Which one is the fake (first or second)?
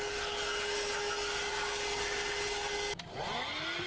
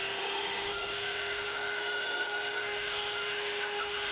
second